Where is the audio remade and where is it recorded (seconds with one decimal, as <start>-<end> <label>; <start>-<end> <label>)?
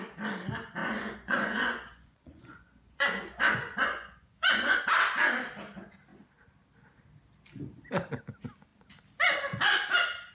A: 0.0-0.8 recorded; 0.8-4.8 remade; 4.8-10.3 recorded